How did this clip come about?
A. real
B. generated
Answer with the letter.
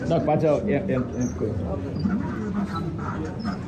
A